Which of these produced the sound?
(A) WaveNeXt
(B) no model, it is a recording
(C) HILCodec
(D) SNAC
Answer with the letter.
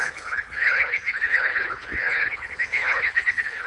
C